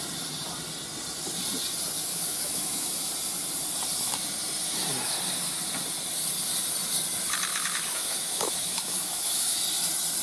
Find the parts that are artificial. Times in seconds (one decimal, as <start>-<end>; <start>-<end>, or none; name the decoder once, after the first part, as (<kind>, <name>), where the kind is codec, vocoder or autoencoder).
2.1-3.1 (autoencoder, DAC-VAE); 7.5-9.6